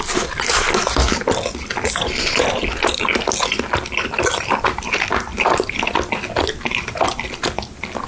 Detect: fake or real real